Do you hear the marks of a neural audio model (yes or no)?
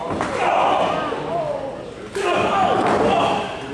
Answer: no